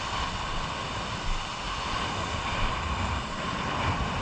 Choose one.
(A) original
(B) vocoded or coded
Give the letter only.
A